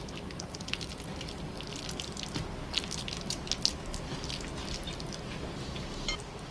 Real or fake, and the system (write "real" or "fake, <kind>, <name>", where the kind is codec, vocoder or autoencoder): real